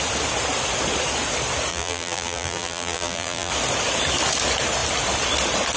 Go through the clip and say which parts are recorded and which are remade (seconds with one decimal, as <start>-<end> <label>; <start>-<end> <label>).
0.0-1.7 recorded; 1.7-3.5 remade; 3.5-5.8 recorded